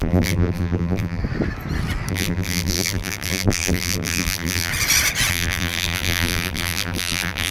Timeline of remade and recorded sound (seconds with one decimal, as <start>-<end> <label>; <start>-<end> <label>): 0.0-1.2 remade; 1.2-2.1 recorded; 2.1-4.7 remade; 4.7-5.3 recorded; 5.3-7.5 remade